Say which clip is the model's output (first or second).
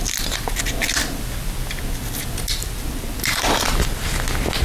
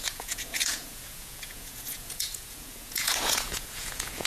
second